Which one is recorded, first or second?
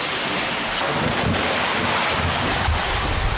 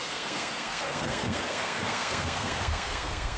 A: first